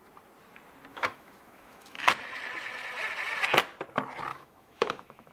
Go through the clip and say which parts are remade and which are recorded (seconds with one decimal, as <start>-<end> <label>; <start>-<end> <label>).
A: 0.0-0.9 recorded; 0.9-2.1 remade; 2.1-4.3 recorded; 4.3-5.3 remade